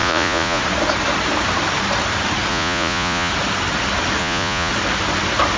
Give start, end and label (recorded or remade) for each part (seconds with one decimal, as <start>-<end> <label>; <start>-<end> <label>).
0.0-0.6 remade; 0.6-2.5 recorded; 2.5-3.3 remade; 3.3-4.2 recorded; 4.2-4.7 remade; 4.7-5.6 recorded